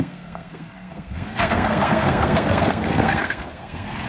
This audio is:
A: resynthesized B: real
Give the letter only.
A